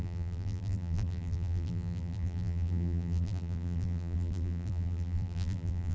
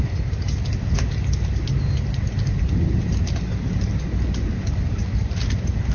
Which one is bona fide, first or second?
second